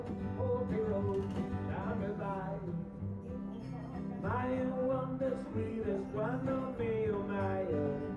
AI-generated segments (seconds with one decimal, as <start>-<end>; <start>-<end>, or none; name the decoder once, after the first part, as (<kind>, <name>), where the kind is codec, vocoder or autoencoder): 2.6-3.2 (vocoder, BigVGAN v2); 4.8-6.8